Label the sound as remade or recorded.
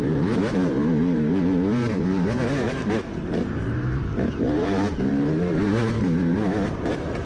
remade